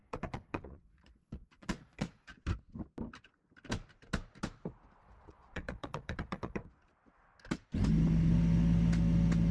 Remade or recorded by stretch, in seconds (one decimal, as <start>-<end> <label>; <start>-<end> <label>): 0.0-2.3 remade; 2.3-5.0 recorded; 5.0-6.6 remade; 6.6-9.5 recorded